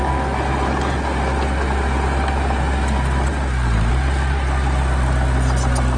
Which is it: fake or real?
real